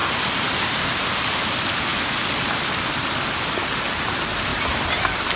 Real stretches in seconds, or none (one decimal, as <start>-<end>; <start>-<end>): 0.9-4.5